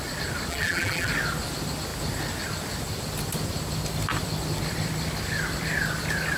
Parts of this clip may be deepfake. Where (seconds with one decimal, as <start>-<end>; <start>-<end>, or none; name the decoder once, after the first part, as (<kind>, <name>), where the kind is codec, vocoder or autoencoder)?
0.5-1.1 (vocoder, BigVGAN v2)